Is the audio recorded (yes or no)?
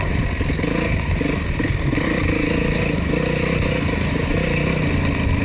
yes